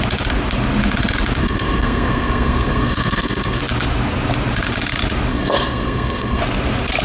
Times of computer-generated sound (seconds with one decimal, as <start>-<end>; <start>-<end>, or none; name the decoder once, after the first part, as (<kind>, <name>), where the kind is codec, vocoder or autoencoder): 1.4-3.6 (codec, SNAC); 5.3-6.4